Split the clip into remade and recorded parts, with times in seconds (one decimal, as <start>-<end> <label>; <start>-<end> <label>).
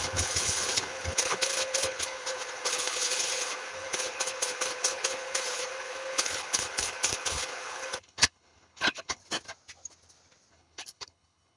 0.0-9.2 remade; 9.2-10.5 recorded; 10.5-11.6 remade